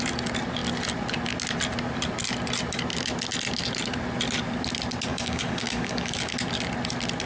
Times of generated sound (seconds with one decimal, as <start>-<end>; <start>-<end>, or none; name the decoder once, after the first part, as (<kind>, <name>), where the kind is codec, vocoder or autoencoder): 5.1-6.3 (codec, DAC)